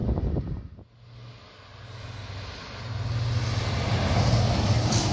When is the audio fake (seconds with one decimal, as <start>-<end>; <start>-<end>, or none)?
0.0-0.6